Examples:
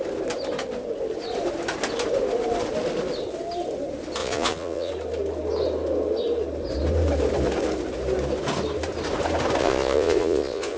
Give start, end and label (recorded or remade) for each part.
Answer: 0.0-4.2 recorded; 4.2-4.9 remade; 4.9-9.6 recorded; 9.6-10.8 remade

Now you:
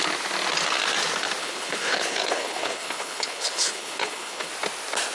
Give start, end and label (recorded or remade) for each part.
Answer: 0.0-1.4 recorded; 1.4-4.5 remade; 4.5-5.1 recorded

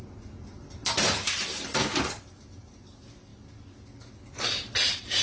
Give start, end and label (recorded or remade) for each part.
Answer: 0.0-5.2 recorded

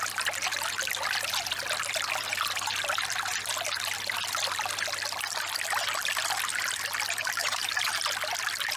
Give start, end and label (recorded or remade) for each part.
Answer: 0.0-7.4 recorded; 7.4-8.0 remade; 8.0-8.8 recorded

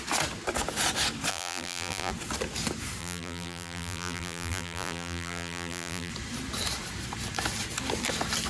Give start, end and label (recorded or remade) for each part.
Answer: 0.0-1.3 recorded; 1.3-2.1 remade; 2.1-3.0 recorded; 3.0-6.1 remade; 6.1-8.5 recorded

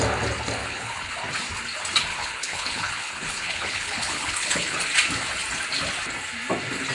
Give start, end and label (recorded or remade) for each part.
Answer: 0.0-0.6 recorded; 0.6-1.1 remade; 1.1-2.1 recorded; 2.1-4.8 remade; 4.8-6.9 recorded

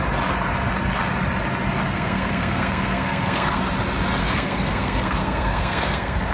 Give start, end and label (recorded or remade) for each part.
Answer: 0.0-1.8 recorded; 1.8-3.6 remade; 3.6-4.2 recorded; 4.2-6.3 remade

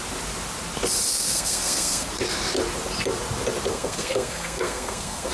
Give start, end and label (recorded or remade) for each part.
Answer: 0.0-1.1 recorded; 1.1-2.1 remade; 2.1-3.7 recorded; 3.7-5.3 remade